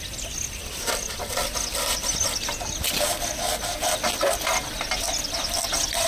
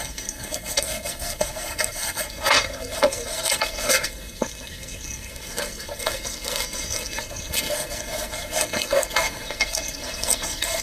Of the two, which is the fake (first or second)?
second